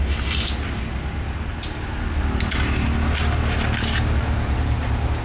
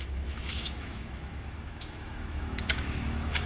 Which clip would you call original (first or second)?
first